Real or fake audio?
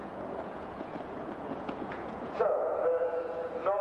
fake